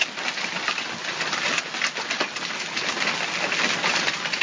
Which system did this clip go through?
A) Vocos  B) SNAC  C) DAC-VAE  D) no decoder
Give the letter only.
D